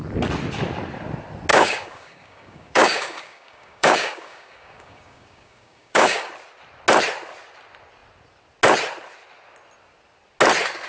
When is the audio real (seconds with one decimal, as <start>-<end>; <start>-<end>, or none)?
0.0-1.5; 6.3-10.9